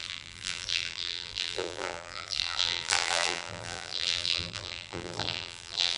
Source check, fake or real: fake